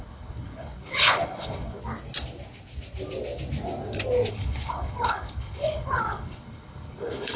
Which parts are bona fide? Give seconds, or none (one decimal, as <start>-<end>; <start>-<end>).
1.8-4.3